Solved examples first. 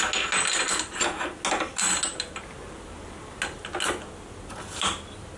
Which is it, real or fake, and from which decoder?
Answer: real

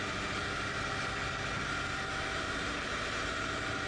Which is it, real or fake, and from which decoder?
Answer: real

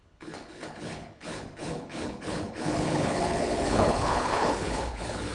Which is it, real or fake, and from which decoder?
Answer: fake, codec, HILCodec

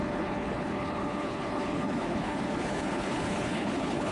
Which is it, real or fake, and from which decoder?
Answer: fake, codec, HILCodec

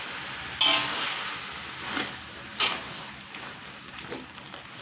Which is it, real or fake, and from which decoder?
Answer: real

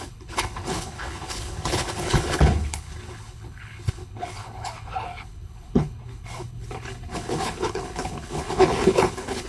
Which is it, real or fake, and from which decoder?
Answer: fake, codec, HILCodec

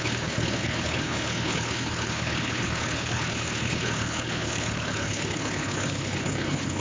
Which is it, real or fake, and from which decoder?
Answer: fake, codec, HILCodec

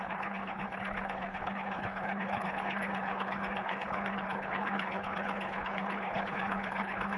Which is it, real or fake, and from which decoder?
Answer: fake, codec, HILCodec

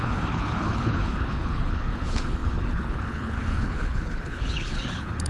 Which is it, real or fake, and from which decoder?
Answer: fake, codec, HILCodec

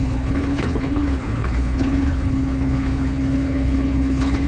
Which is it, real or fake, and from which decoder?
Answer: fake, codec, HILCodec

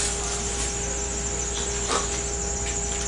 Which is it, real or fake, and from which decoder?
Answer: real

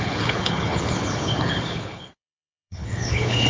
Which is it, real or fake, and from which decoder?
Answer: fake, codec, HILCodec